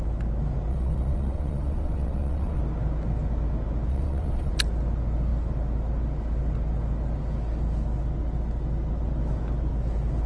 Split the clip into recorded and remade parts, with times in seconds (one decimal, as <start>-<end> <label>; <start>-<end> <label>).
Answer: 0.0-0.7 recorded; 0.7-2.6 remade; 2.6-3.9 recorded; 3.9-4.5 remade; 4.5-10.3 recorded